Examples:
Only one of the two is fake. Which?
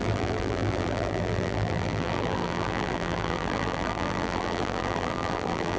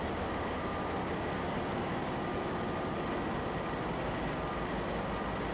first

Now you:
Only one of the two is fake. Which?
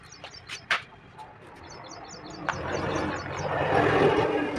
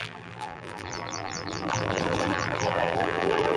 second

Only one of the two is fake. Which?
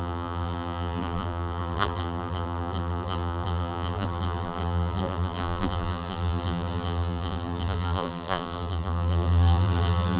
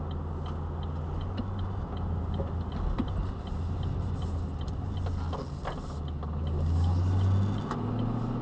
first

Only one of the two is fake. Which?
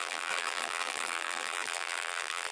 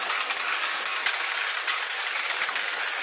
first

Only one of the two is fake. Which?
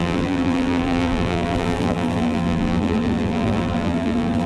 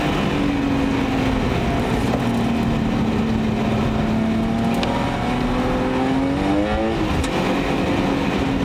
first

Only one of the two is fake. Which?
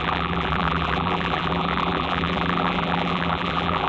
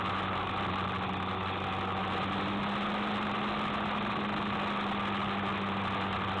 first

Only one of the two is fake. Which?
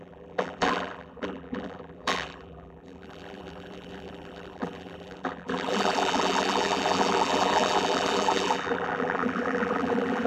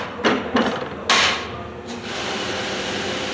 first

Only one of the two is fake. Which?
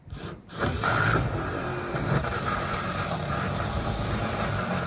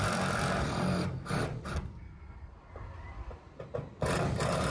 first